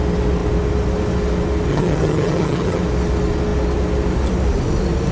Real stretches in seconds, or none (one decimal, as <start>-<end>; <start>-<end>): 0.0-1.7; 2.8-5.1